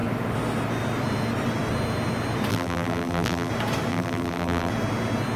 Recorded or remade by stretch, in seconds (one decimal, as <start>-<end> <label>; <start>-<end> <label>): 0.0-2.5 recorded; 2.5-3.5 remade; 3.5-3.9 recorded; 3.9-4.7 remade; 4.7-5.4 recorded